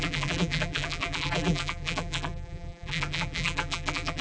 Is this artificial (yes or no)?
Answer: yes